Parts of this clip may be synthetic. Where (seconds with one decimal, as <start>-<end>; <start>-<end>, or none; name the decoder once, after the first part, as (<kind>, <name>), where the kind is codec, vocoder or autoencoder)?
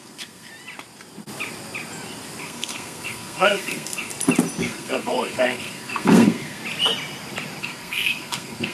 0.0-0.5 (codec, SNAC); 2.4-4.1; 4.6-6.6; 7.6-8.7